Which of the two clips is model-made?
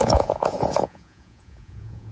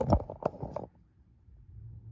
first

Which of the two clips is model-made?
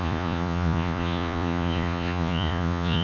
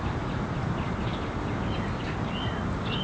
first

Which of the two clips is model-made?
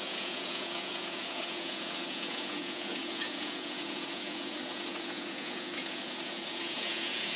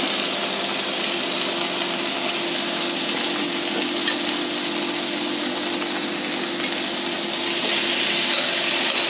first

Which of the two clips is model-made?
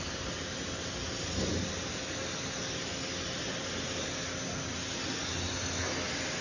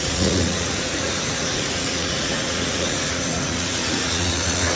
second